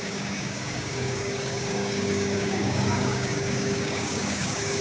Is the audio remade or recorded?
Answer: remade